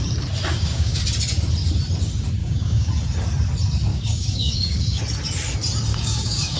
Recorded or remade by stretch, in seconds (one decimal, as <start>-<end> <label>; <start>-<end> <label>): 0.0-0.5 recorded; 0.5-1.0 remade; 1.0-2.4 recorded; 2.4-2.9 remade; 2.9-3.9 recorded; 3.9-5.0 remade; 5.0-5.9 recorded; 5.9-6.6 remade